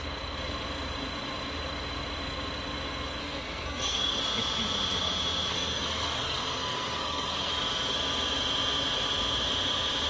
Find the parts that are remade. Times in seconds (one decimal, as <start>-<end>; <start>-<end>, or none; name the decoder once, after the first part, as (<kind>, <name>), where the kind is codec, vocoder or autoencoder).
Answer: 3.2-4.2 (codec, SNAC); 5.5-7.5